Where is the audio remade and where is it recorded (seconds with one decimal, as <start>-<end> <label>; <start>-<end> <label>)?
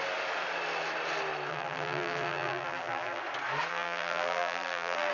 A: 0.0-1.5 recorded; 1.5-3.2 remade; 3.2-3.7 recorded; 3.7-5.1 remade